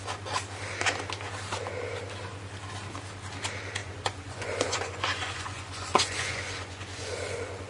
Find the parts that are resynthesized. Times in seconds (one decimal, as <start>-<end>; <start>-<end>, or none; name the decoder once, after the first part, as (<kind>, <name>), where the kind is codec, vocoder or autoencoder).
3.8-7.7 (vocoder, Vocos)